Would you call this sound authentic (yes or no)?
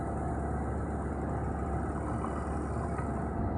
yes